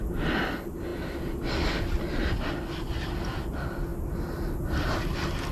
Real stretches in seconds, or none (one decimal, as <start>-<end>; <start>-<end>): 0.0-5.5